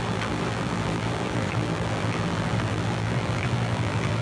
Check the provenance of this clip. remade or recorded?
remade